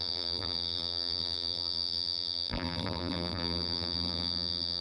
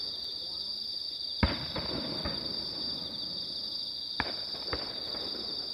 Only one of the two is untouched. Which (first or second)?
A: second